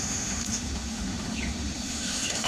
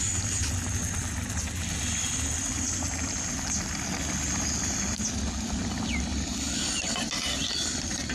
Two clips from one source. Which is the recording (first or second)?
second